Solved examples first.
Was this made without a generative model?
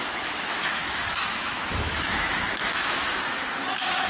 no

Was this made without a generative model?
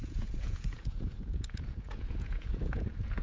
no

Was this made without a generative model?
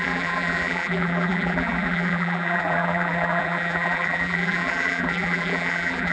no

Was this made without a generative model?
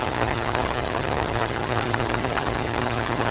no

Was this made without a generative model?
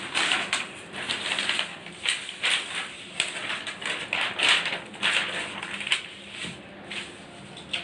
yes